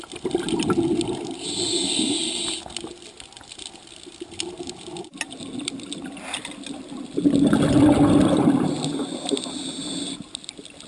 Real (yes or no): yes